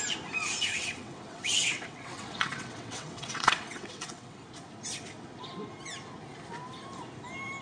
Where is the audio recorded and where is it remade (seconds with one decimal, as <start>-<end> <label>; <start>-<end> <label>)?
0.0-0.7 recorded; 0.7-4.4 remade; 4.4-7.6 recorded